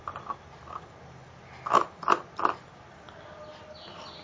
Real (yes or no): yes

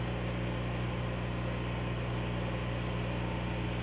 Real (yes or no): yes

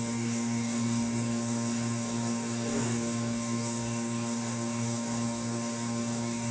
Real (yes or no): no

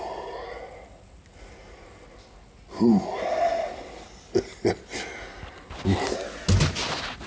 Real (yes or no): yes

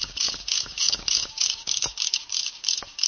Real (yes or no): no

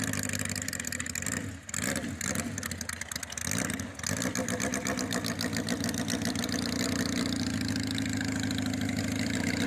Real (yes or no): yes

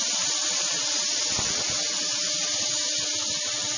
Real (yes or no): yes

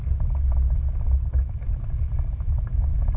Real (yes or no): yes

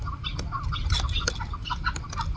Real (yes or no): yes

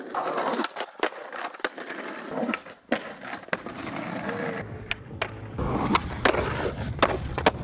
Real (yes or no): yes